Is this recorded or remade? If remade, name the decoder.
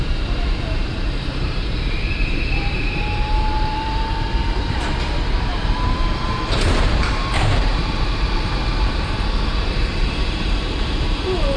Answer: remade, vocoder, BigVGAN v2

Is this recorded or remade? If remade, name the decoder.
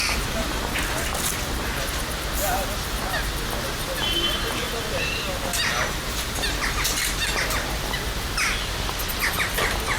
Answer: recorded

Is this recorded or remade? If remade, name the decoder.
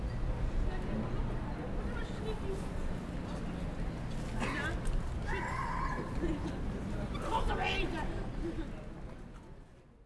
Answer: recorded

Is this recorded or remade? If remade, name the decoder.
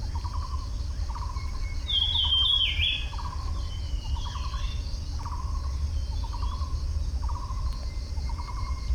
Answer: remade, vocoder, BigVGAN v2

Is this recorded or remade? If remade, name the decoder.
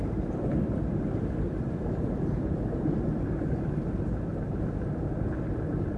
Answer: remade, vocoder, BigVGAN v2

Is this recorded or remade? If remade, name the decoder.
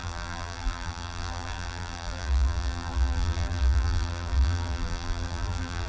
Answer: remade, vocoder, BigVGAN v2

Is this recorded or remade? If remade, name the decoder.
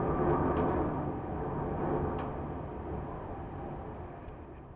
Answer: recorded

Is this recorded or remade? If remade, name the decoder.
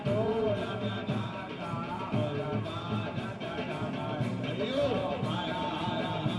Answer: recorded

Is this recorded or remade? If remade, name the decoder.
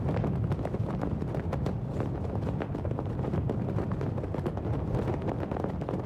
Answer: recorded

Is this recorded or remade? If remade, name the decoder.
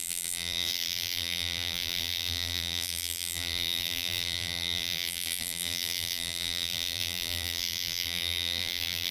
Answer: remade, vocoder, BigVGAN v2